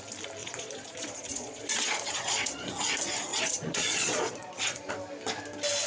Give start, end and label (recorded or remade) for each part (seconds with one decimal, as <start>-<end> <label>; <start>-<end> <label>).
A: 0.0-0.4 recorded; 0.4-2.7 remade; 2.7-3.3 recorded; 3.3-4.9 remade; 4.9-5.9 recorded